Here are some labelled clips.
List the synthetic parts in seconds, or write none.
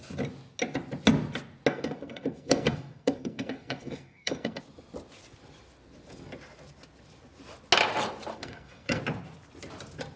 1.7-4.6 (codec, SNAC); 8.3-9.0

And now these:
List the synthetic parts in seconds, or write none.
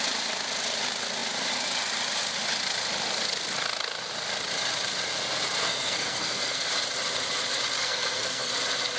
5.6-6.7 (codec, SNAC); 7.8-8.5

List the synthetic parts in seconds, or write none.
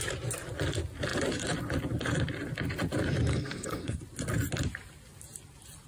3.3-4.0 (codec, SNAC)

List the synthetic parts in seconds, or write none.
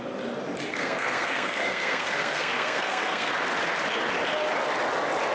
0.7-3.3 (codec, SNAC)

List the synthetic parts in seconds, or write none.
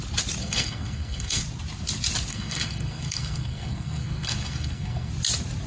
0.4-1.4 (codec, SNAC); 2.3-5.1